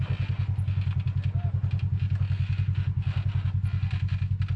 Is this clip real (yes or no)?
yes